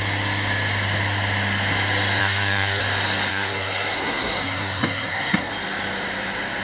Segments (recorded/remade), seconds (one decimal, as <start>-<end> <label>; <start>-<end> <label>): 0.0-2.2 recorded; 2.2-2.8 remade; 2.8-3.3 recorded; 3.3-5.5 remade; 5.5-6.6 recorded